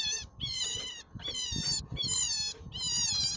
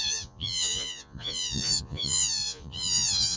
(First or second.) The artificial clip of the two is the second